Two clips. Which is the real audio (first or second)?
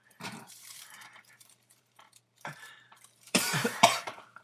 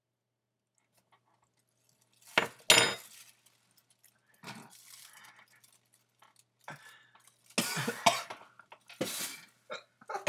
second